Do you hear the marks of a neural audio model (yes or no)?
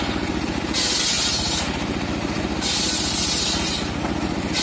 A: no